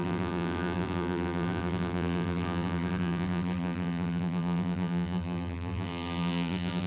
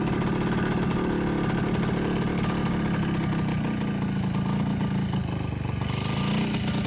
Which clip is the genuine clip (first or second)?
second